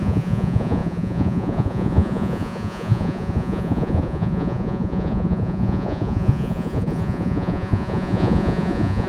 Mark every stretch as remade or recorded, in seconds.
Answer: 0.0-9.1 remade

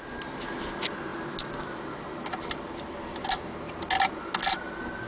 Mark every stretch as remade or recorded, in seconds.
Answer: 0.0-5.1 recorded

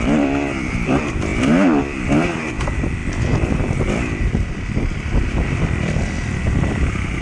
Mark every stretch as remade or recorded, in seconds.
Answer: 0.0-1.3 remade; 1.3-1.8 recorded; 1.8-7.2 remade

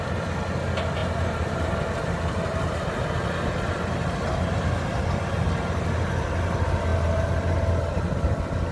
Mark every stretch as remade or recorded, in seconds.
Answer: 0.0-1.0 recorded; 1.0-1.6 remade; 1.6-8.7 recorded

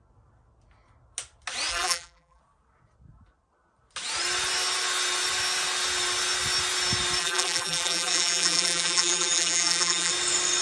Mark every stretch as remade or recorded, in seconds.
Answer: 0.0-1.7 recorded; 1.7-2.4 remade; 2.4-7.2 recorded; 7.2-10.1 remade; 10.1-10.6 recorded

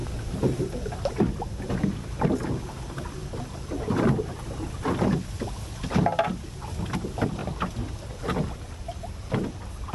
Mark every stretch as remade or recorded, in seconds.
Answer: 0.0-9.9 recorded

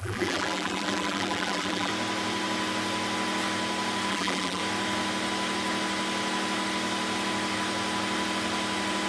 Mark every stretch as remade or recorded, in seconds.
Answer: 0.0-1.9 remade; 1.9-4.1 recorded; 4.1-4.6 remade; 4.6-9.1 recorded